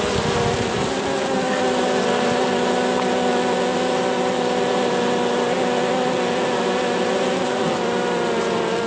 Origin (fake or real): real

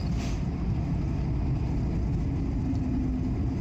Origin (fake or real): real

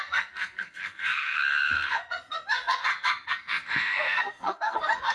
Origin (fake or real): fake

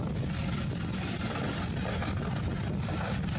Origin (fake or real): real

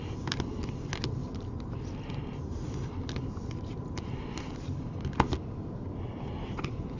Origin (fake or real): real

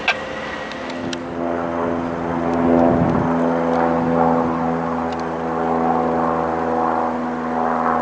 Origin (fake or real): real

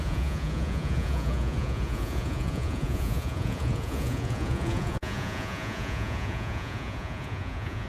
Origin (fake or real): fake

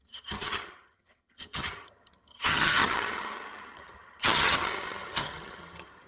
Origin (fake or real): fake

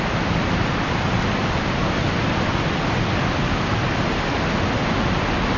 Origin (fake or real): real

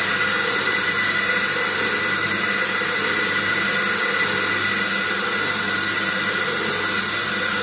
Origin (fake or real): real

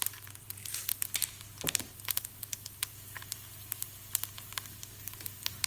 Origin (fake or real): real